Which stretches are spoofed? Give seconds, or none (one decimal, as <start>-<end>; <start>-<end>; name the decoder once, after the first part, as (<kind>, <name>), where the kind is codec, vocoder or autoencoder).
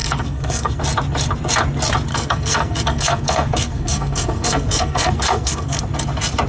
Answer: 0.0-0.8 (codec, SNAC); 2.1-5.8